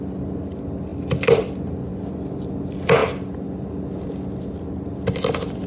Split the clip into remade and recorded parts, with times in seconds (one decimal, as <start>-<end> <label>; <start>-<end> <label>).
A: 0.0-5.7 recorded

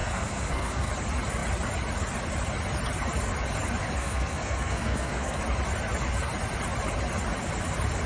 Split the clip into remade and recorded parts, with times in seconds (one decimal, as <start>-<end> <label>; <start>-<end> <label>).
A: 0.0-0.9 remade; 0.9-4.0 recorded; 4.0-5.4 remade; 5.4-8.1 recorded